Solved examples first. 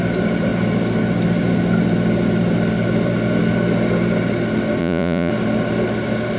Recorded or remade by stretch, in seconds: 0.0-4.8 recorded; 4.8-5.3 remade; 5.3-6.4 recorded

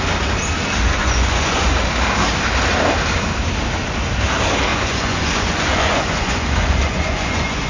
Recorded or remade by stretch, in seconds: 0.0-1.0 recorded; 1.0-1.7 remade; 1.7-4.7 recorded; 4.7-7.7 remade

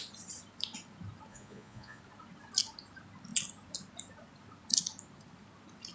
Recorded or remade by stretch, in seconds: 0.0-1.3 recorded; 1.3-2.0 remade; 2.0-5.9 recorded

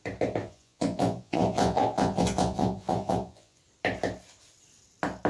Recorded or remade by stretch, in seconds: 0.0-0.4 recorded; 0.4-3.6 remade; 3.6-5.3 recorded